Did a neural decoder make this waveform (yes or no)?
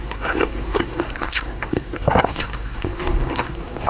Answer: yes